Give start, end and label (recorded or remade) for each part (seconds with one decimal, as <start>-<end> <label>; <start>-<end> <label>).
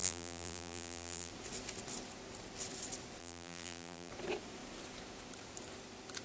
0.0-1.3 remade; 1.3-3.2 recorded; 3.2-4.1 remade; 4.1-6.2 recorded